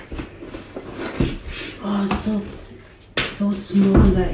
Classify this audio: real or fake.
real